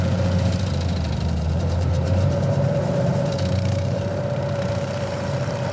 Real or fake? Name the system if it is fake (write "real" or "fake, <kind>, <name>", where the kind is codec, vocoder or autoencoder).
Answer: fake, vocoder, BigVGAN v2